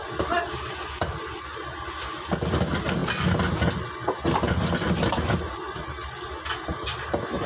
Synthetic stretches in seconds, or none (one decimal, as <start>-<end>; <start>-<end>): none

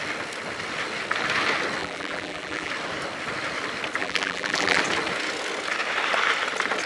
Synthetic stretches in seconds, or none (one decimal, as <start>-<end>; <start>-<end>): 1.8-2.7; 4.0-4.8

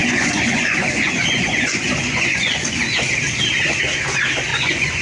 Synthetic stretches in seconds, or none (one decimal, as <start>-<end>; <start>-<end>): 0.0-3.0; 4.5-5.0